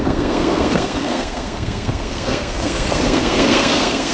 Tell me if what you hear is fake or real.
fake